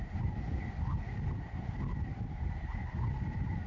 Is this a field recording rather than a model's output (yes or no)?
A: yes